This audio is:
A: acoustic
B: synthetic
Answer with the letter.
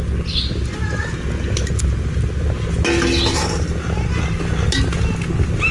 A